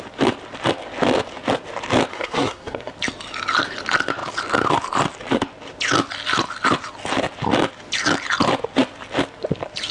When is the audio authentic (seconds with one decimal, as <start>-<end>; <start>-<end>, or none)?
0.0-2.1; 2.9-9.9